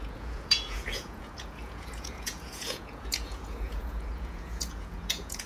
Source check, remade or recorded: remade